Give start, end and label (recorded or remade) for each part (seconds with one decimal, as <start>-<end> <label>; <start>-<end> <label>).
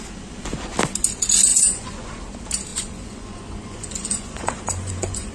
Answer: 0.0-1.5 recorded; 1.5-2.1 remade; 2.1-2.7 recorded; 2.7-5.3 remade